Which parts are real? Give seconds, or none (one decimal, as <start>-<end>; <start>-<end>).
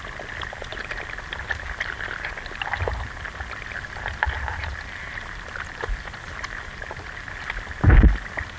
0.0-8.6